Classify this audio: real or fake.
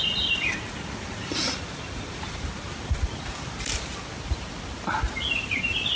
real